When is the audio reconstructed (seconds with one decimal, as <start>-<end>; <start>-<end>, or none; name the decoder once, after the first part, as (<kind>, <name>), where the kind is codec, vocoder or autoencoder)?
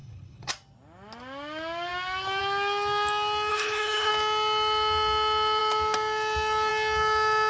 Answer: 0.0-0.5 (codec, HILCodec); 3.5-4.1